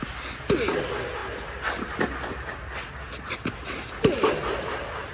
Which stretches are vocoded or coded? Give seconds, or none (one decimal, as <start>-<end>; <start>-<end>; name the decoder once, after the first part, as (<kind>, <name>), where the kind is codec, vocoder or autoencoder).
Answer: none